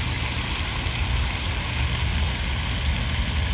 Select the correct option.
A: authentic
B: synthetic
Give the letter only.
A